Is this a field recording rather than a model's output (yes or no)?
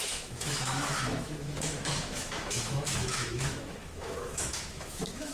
no